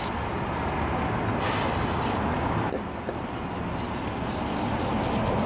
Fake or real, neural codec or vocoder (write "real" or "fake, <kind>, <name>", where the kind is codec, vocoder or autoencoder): real